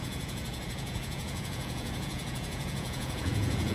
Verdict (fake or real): fake